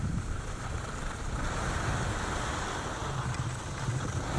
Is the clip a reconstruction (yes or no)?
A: no